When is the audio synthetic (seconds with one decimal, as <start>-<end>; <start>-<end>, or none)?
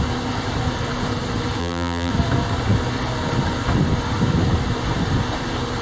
1.6-2.1